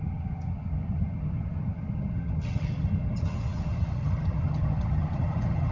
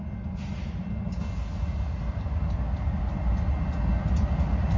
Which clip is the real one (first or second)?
second